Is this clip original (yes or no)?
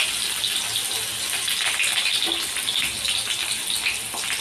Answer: yes